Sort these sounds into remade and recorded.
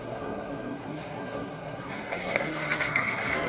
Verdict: remade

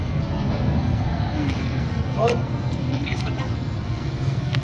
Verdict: remade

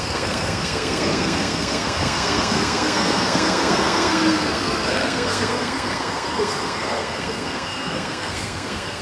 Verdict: remade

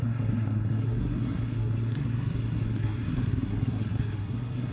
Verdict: remade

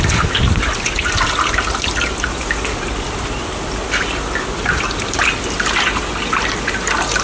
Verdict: recorded